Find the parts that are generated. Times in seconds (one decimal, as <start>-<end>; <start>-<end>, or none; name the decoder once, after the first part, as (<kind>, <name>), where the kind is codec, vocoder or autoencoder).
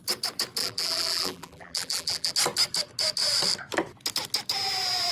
0.6-2.3 (vocoder, BigVGAN v2)